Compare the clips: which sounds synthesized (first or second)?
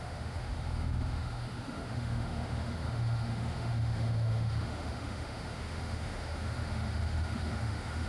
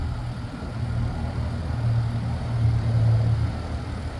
first